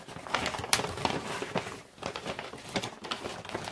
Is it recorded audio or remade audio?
recorded